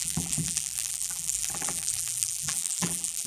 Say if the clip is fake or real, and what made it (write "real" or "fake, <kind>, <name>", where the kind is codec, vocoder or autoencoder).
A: fake, vocoder, BigVGAN v2